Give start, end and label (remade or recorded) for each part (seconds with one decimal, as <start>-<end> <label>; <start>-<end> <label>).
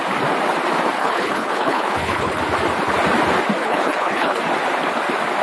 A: 0.0-1.0 recorded; 1.0-2.4 remade; 2.4-3.6 recorded; 3.6-4.4 remade; 4.4-5.4 recorded